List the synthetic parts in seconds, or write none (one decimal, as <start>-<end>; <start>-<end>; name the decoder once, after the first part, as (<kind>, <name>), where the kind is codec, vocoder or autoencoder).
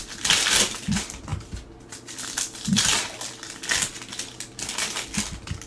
none